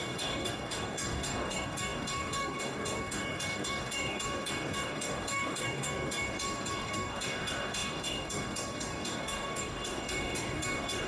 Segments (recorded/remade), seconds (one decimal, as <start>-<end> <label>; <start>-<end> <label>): 0.0-11.1 remade